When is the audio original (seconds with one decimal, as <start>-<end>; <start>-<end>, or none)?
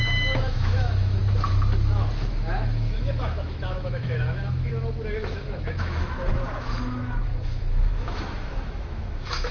1.2-2.3; 4.7-5.3